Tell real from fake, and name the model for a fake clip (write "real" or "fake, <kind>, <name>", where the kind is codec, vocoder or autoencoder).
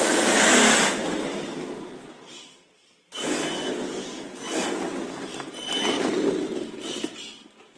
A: real